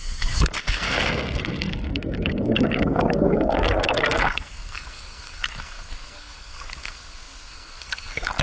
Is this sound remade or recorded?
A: remade